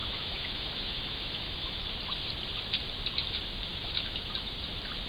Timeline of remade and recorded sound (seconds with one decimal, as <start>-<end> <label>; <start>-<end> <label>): 0.0-1.8 remade; 1.8-3.7 recorded; 3.7-4.3 remade; 4.3-5.1 recorded